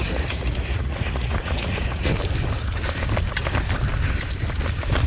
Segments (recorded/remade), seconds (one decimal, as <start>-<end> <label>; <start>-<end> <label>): 0.0-2.1 remade; 2.1-5.1 recorded